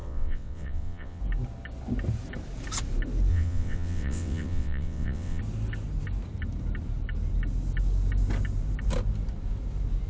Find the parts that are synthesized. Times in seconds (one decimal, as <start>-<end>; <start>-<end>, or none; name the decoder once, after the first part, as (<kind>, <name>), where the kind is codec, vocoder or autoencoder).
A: 0.0-1.2 (vocoder, WaveNeXt); 3.3-5.4

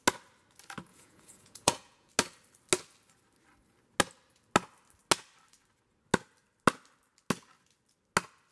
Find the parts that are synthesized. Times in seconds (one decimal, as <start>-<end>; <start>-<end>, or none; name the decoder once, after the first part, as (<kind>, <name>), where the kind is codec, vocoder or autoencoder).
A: 0.9-2.1 (vocoder, Vocos)

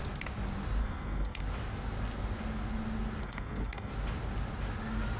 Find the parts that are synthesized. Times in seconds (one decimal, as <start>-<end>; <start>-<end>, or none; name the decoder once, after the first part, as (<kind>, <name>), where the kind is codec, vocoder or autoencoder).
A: 0.8-1.4 (codec, SNAC); 3.2-3.9

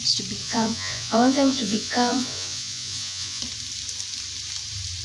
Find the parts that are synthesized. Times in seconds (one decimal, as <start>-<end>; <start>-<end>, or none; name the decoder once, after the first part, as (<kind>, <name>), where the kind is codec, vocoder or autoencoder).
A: 0.4-3.4 (vocoder, Vocos)

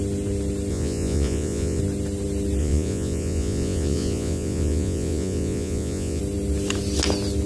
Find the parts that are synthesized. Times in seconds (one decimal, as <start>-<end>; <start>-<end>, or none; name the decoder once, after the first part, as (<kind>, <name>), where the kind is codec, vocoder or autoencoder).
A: 0.7-1.8 (vocoder, Vocos); 2.6-6.2

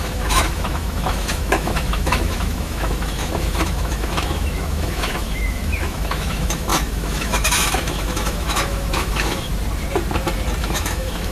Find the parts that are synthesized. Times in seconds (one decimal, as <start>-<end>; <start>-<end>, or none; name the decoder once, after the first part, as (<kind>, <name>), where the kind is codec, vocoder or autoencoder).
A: 0.0-9.5 (autoencoder, DAC-VAE); 10.6-11.3

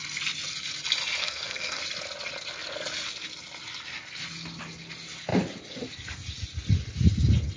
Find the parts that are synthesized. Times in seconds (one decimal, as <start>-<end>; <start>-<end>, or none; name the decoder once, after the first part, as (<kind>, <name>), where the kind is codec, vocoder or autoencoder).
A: 1.2-1.8 (codec, SNAC)